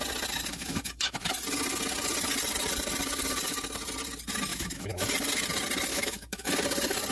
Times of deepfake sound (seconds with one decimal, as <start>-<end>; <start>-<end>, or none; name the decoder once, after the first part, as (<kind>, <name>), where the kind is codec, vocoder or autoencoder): 0.5-1.3 (autoencoder, DAC-VAE); 4.5-5.1; 5.9-6.5